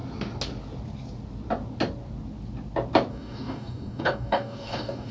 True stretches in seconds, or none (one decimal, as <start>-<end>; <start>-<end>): 0.0-3.1